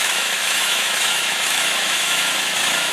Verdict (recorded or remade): remade